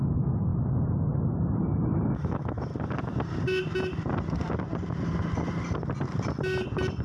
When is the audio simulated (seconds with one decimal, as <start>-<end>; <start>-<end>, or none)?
0.0-0.5; 2.0-2.7